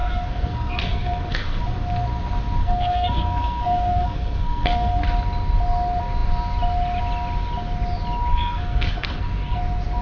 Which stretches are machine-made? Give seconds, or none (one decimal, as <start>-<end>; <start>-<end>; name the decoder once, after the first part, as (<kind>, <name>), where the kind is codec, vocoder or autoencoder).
0.0-1.6 (codec, SNAC); 2.6-5.0; 8.3-9.6